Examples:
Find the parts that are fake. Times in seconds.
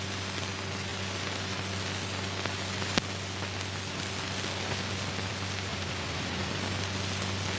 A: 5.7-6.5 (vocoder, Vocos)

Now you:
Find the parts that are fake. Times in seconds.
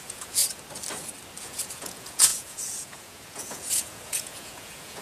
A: 0.0-0.4 (vocoder, Vocos); 1.4-5.0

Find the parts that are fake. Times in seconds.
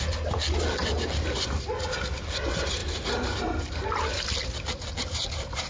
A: none